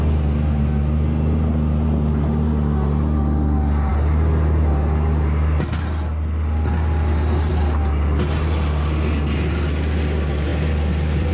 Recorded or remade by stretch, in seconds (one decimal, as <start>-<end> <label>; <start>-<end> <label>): 0.0-10.5 recorded; 10.5-11.3 remade